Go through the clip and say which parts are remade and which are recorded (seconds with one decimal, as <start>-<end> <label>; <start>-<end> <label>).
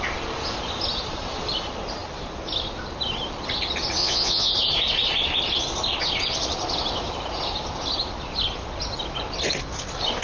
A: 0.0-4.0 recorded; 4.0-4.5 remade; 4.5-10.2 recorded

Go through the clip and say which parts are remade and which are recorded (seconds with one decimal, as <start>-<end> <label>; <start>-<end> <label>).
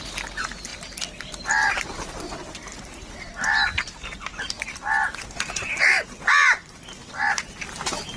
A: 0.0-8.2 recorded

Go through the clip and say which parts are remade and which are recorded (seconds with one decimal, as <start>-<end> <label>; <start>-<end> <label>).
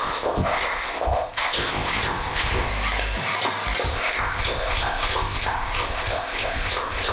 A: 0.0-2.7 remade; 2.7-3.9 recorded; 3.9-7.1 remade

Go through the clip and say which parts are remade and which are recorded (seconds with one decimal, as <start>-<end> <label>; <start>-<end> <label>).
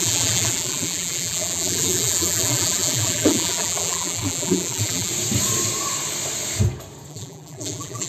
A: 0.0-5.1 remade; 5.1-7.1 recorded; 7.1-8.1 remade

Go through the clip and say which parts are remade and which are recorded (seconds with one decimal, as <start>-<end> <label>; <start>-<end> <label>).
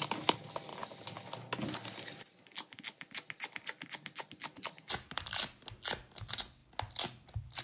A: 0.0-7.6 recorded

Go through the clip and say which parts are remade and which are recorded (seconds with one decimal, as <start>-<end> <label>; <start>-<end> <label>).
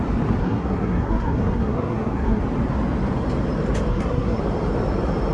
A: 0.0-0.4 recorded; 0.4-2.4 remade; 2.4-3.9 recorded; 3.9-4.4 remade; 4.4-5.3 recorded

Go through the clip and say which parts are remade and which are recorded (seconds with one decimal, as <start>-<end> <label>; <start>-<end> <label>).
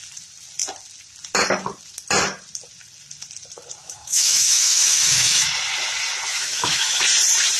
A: 0.0-3.8 recorded; 3.8-5.5 remade; 5.5-6.3 recorded; 6.3-7.0 remade; 7.0-7.6 recorded